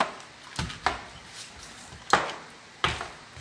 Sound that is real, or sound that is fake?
real